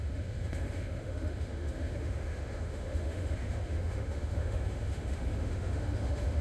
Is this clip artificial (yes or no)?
yes